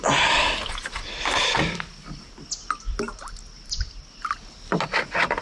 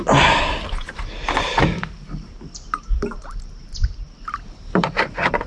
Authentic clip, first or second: first